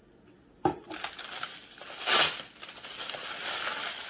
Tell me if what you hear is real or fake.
real